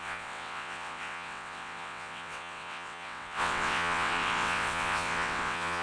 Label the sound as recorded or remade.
remade